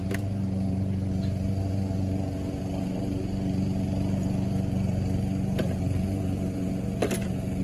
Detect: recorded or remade remade